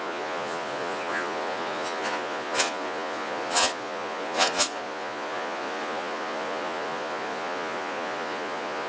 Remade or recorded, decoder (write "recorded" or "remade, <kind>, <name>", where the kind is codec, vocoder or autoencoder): remade, vocoder, Vocos